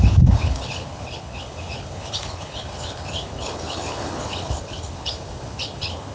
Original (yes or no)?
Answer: no